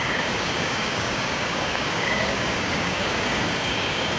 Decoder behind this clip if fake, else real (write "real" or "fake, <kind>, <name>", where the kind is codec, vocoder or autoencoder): fake, codec, DAC